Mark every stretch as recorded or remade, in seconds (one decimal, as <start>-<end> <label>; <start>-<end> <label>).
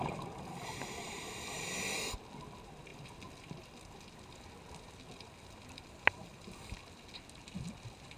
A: 0.0-8.2 recorded